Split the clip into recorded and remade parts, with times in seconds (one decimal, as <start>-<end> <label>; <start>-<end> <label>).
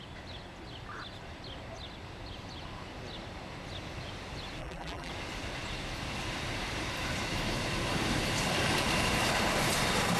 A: 0.0-4.6 recorded; 4.6-5.1 remade; 5.1-10.2 recorded